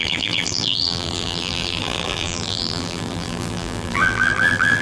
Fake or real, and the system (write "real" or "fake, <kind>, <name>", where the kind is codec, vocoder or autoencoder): fake, vocoder, BigVGAN v2